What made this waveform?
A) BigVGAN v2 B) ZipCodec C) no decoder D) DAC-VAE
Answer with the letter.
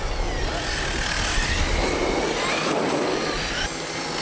C